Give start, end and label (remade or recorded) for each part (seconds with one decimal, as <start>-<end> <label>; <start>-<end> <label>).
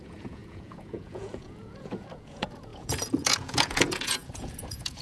0.0-5.0 remade